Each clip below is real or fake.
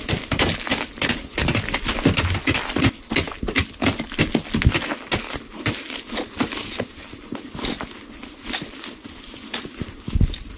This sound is real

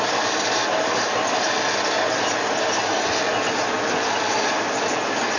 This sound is real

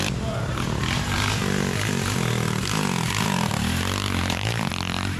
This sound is real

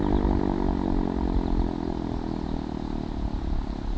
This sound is real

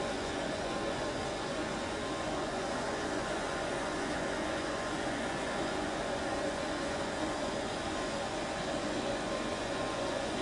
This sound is fake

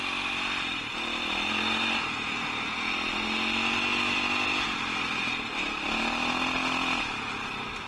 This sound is real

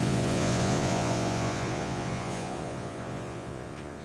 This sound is fake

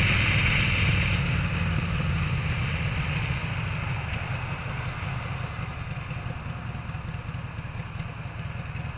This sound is real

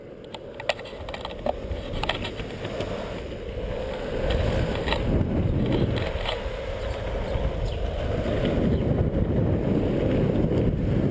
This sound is real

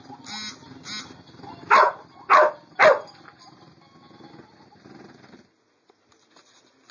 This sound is real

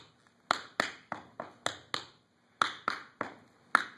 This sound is real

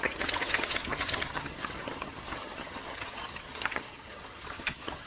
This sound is fake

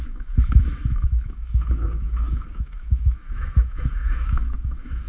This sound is fake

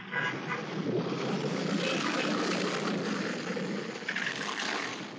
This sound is fake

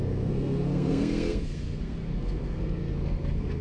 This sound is fake